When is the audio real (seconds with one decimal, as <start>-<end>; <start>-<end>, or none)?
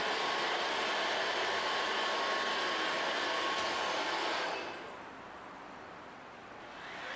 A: 0.0-7.2